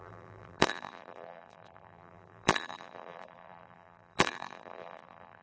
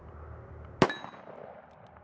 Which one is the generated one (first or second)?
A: first